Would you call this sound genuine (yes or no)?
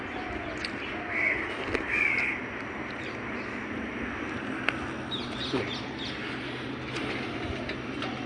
yes